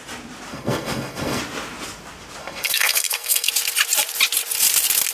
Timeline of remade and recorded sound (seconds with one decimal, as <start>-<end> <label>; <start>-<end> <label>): 0.0-0.5 recorded; 0.5-1.4 remade; 1.4-2.4 recorded; 2.4-3.5 remade; 3.5-5.1 recorded